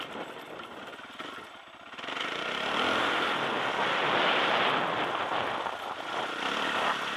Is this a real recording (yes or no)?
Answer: yes